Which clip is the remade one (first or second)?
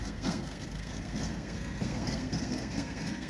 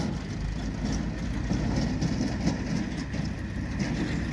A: first